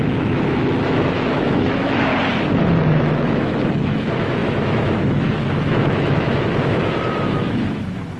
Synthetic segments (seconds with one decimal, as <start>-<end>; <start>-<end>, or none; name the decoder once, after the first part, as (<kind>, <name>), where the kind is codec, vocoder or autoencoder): 0.0-2.1 (autoencoder, DAC-VAE); 2.7-8.2